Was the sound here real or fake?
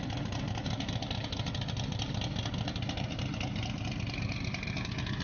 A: real